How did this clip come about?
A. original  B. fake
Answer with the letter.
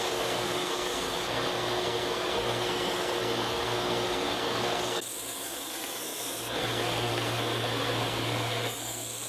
B